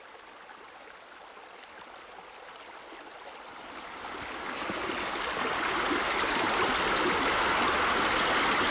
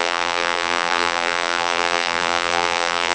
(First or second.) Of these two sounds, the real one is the first